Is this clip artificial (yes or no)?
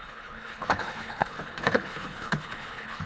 yes